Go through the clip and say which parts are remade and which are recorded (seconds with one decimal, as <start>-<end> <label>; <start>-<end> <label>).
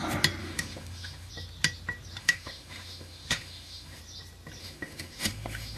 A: 0.0-0.4 recorded; 0.4-1.3 remade; 1.3-2.2 recorded; 2.2-4.0 remade; 4.0-4.6 recorded; 4.6-5.8 remade